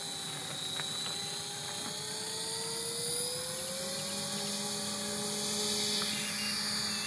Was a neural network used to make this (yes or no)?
no